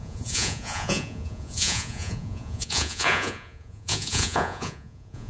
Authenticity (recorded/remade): remade